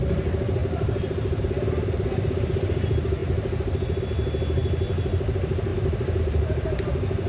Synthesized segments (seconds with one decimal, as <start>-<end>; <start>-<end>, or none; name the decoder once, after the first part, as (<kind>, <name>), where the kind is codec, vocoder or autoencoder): 0.6-1.4 (vocoder, BigVGAN v2); 5.7-6.2